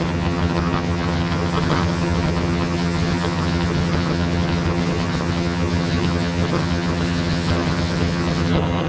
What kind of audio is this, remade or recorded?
remade